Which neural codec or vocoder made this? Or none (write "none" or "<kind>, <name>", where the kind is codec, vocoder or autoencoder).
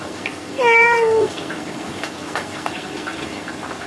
codec, SNAC